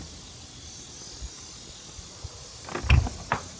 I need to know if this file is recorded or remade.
recorded